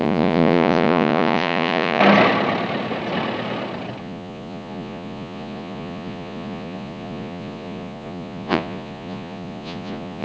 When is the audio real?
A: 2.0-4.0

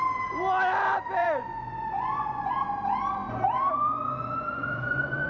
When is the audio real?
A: 0.0-1.2; 2.5-3.2

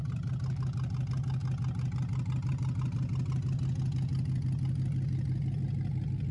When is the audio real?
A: 0.0-6.3

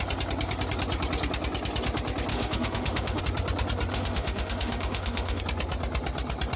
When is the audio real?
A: 0.0-2.3; 3.2-3.9; 5.4-6.6

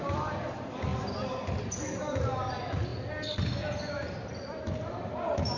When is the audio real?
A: 2.9-3.9

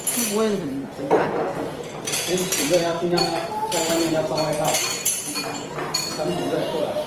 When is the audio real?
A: 0.0-0.7; 3.2-7.1